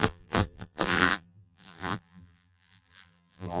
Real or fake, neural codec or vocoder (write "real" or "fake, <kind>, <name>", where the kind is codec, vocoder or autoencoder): fake, vocoder, BigVGAN v2